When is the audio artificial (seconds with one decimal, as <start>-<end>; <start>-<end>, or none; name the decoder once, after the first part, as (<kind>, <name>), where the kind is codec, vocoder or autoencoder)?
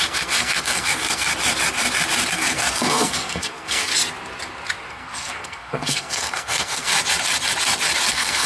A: 0.0-1.3 (codec, SNAC); 2.3-3.9; 4.9-6.9; 8.1-8.5